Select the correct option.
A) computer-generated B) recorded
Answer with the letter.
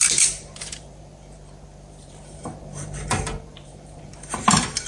A